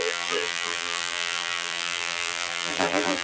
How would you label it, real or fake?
fake